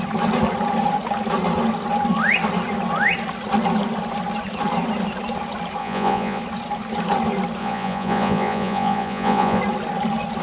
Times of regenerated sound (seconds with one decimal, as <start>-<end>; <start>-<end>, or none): 5.8-6.4; 7.6-9.6